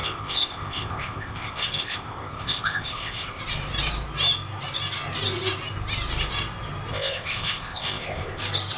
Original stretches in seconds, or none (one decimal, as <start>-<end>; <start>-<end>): 3.4-6.9; 8.4-8.8